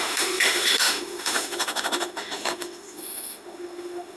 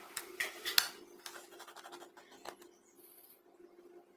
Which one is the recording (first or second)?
second